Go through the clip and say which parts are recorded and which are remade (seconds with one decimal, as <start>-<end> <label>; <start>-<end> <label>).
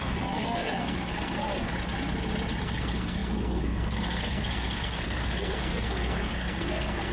0.0-1.7 remade; 1.7-2.6 recorded; 2.6-7.1 remade